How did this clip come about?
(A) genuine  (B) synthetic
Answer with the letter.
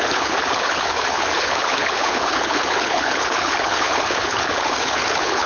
B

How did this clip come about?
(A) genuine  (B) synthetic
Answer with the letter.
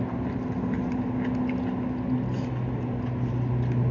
A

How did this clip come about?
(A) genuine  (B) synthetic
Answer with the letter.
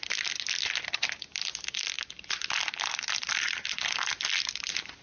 A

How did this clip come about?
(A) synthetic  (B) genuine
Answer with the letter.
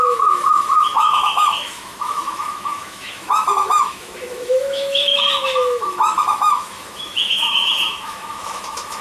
A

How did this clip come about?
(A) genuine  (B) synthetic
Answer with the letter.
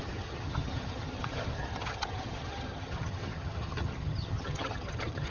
B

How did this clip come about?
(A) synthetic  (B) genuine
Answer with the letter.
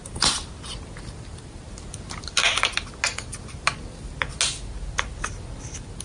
B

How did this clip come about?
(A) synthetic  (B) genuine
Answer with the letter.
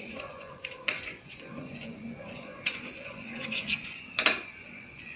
A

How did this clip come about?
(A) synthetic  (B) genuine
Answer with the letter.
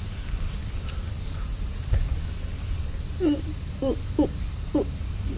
B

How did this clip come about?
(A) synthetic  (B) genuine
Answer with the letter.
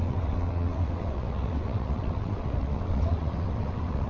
A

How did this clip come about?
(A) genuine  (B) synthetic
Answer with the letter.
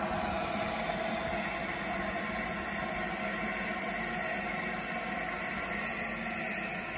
A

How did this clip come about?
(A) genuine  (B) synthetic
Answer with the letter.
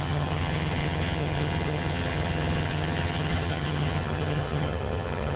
B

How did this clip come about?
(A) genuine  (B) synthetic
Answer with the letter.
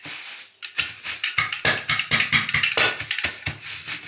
A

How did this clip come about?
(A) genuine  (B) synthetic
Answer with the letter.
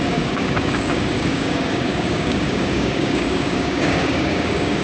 B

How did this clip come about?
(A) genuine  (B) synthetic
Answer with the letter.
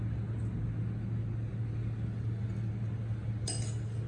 A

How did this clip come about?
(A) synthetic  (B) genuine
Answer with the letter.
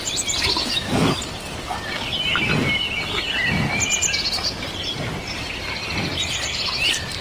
B